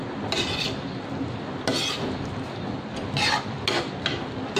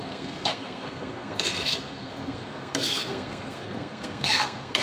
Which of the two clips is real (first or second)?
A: first